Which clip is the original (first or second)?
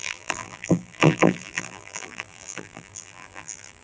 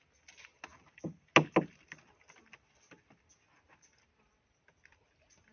second